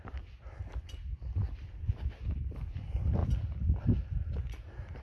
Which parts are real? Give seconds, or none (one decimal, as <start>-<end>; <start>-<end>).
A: 0.0-5.0